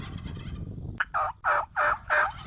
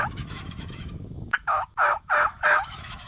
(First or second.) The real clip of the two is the first